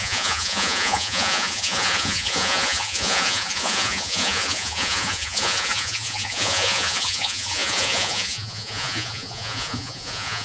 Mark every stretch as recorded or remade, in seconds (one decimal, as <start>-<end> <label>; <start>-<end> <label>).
0.0-10.4 remade